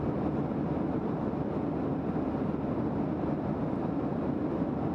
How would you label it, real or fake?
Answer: real